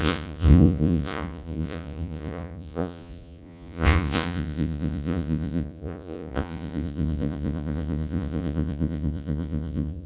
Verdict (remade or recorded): remade